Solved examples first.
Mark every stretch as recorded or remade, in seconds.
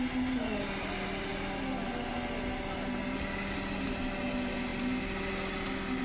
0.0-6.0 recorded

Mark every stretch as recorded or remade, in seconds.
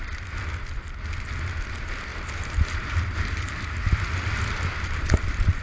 0.0-2.1 recorded; 2.1-5.6 remade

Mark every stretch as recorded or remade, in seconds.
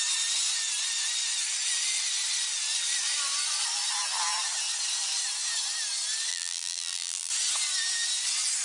0.0-6.3 recorded; 6.3-7.3 remade; 7.3-8.6 recorded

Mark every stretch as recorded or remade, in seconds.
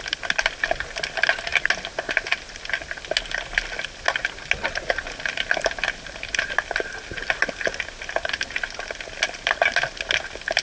0.0-10.6 recorded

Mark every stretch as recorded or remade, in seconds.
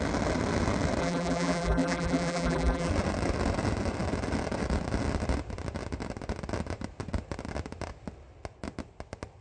0.0-1.0 recorded; 1.0-2.9 remade; 2.9-9.4 recorded